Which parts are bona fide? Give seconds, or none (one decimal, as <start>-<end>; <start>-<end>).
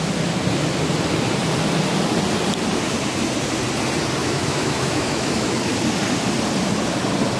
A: 0.0-4.2; 5.7-7.4